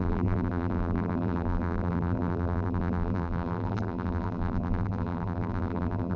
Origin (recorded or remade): remade